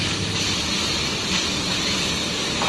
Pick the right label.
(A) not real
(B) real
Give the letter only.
B